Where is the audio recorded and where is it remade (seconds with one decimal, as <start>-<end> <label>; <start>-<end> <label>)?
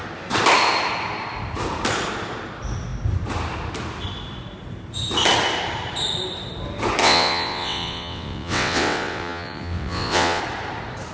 0.0-7.0 recorded; 7.0-10.4 remade; 10.4-11.1 recorded